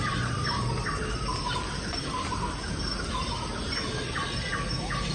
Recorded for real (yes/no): yes